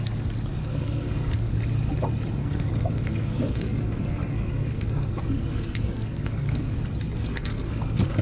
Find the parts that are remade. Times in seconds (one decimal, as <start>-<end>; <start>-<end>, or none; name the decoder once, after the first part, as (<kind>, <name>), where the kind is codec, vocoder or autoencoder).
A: 0.6-1.5 (codec, SNAC); 2.4-6.8; 7.3-8.2